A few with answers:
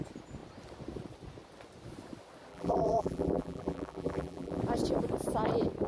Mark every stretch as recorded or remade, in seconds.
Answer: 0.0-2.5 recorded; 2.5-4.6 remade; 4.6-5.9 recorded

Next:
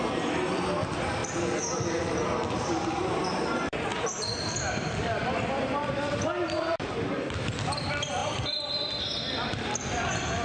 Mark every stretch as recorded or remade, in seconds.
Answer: 0.0-1.2 remade; 1.2-1.9 recorded; 1.9-3.9 remade; 3.9-4.7 recorded; 4.7-10.4 remade

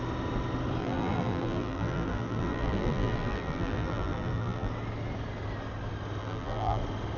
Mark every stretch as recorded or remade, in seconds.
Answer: 0.0-0.8 recorded; 0.8-4.7 remade; 4.7-6.2 recorded; 6.2-6.8 remade; 6.8-7.2 recorded

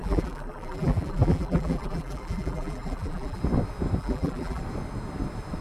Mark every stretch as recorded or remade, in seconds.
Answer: 0.0-3.4 remade; 3.4-4.0 recorded; 4.0-4.6 remade; 4.6-5.6 recorded